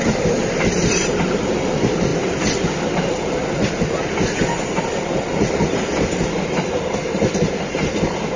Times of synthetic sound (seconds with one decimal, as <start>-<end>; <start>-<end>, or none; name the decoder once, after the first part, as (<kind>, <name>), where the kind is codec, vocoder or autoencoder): 0.0-3.4 (vocoder, BigVGAN v2); 4.9-8.4